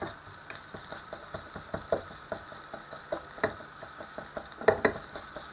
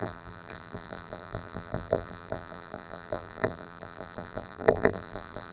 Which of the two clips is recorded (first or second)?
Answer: first